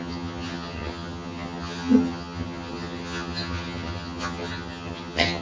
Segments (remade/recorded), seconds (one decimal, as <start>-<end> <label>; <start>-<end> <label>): 0.0-5.4 remade